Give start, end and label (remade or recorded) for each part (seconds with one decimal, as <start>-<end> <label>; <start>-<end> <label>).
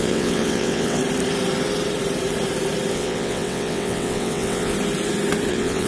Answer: 0.0-1.0 remade; 1.0-2.9 recorded; 2.9-4.7 remade; 4.7-5.5 recorded; 5.5-5.9 remade